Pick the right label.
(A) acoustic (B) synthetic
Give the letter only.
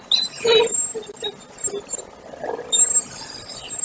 A